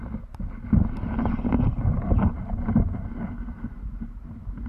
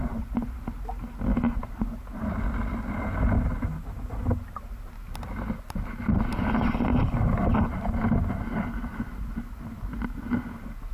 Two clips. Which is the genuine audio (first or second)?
second